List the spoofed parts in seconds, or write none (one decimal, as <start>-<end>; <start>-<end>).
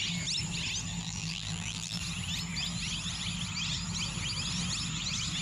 1.0-2.0